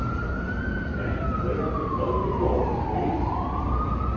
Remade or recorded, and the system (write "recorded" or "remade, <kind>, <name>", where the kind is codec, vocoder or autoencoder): recorded